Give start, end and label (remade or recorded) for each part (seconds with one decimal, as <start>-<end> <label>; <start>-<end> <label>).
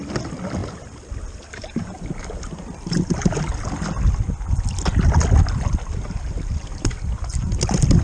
0.0-8.0 recorded